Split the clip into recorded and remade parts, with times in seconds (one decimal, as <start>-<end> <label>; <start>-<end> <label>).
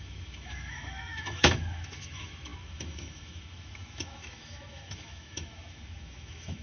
0.0-6.6 remade